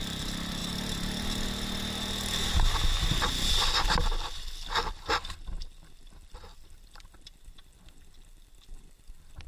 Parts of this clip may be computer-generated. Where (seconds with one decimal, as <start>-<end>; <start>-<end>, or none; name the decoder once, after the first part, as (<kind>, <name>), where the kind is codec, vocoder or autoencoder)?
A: 0.0-0.6 (vocoder, BigVGAN v2); 3.5-9.5